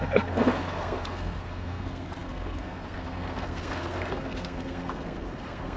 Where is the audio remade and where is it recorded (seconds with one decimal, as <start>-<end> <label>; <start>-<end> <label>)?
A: 0.0-5.8 remade